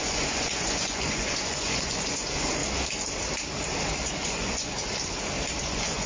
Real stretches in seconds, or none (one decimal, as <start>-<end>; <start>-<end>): 2.6-4.0; 4.8-5.6